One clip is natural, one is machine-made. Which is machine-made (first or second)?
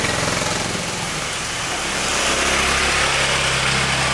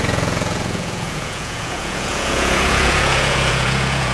second